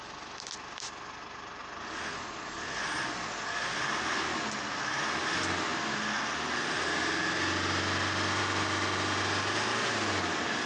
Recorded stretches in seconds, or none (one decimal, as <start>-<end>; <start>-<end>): 0.0-10.7

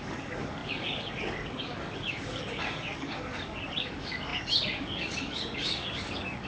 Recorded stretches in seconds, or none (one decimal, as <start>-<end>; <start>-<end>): none

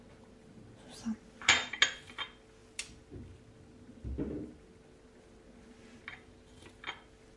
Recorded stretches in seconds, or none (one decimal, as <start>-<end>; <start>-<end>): 0.0-7.4

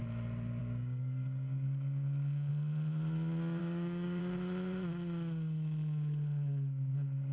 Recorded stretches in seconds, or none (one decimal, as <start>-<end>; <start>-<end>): 0.0-0.6; 2.5-3.6; 4.2-7.3

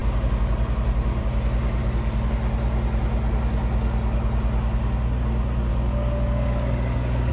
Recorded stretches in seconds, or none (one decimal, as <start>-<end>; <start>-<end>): 0.0-1.8; 2.3-5.7